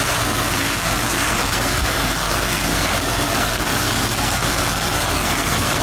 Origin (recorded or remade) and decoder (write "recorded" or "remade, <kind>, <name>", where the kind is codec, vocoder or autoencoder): remade, codec, SNAC